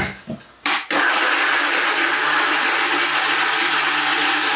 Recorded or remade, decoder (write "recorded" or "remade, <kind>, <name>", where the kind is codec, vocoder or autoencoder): recorded